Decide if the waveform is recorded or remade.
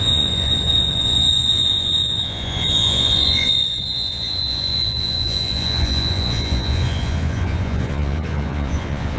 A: remade